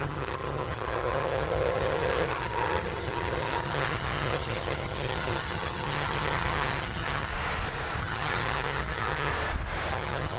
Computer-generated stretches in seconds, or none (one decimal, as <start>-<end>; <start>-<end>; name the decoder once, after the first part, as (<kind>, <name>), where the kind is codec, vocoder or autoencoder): 0.0-7.3 (vocoder, HiFi-GAN); 8.0-9.3; 9.9-10.4